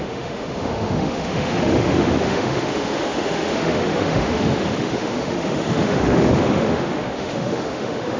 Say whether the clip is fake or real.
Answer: fake